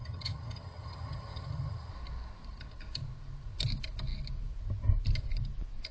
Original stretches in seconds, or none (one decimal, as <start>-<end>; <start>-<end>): 1.9-5.9